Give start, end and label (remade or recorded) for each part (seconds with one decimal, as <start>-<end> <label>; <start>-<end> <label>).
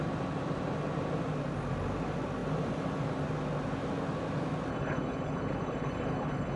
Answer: 0.0-4.7 recorded; 4.7-6.6 remade